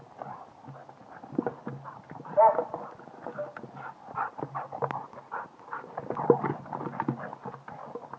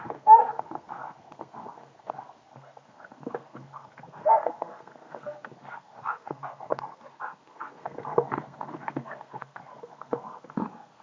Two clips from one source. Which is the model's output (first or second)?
second